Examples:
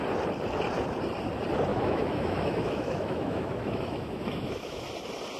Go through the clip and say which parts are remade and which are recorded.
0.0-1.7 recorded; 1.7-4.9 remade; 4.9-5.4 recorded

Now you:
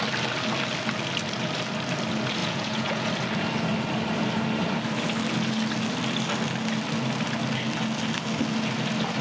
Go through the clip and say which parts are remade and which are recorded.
0.0-2.4 recorded; 2.4-3.1 remade; 3.1-9.2 recorded

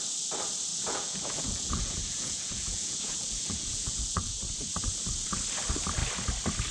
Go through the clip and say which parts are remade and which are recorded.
0.0-0.7 recorded; 0.7-4.4 remade; 4.4-6.7 recorded

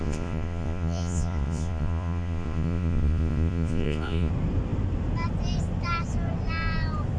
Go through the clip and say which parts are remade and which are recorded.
0.0-4.3 remade; 4.3-7.2 recorded

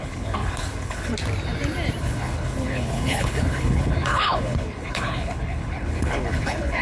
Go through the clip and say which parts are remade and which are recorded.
0.0-1.1 remade; 1.1-2.0 recorded; 2.0-6.8 remade

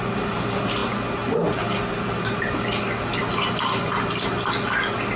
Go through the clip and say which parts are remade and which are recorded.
0.0-5.2 recorded

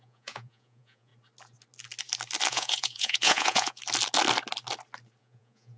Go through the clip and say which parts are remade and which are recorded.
0.0-1.1 remade; 1.1-2.5 recorded; 2.5-3.8 remade; 3.8-5.2 recorded; 5.2-5.8 remade